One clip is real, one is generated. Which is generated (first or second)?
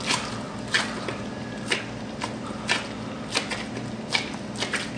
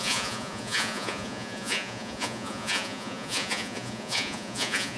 second